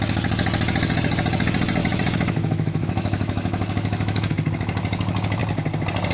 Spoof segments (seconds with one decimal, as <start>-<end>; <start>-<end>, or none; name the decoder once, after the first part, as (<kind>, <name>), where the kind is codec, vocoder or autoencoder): 1.8-4.3 (autoencoder, DAC-VAE)